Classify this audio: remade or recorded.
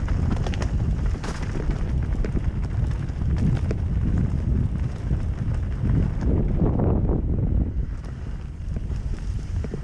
recorded